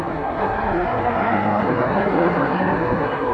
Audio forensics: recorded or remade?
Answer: remade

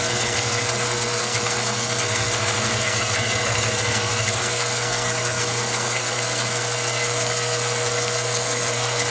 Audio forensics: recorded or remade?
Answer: remade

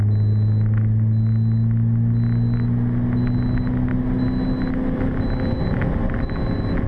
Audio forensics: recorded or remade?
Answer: recorded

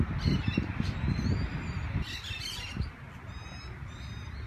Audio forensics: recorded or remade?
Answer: recorded